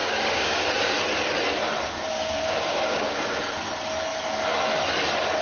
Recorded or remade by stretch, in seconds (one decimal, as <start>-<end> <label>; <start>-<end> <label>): 0.0-0.6 remade; 0.6-2.1 recorded; 2.1-3.4 remade; 3.4-5.4 recorded